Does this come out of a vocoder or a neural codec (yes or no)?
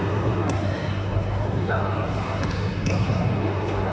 yes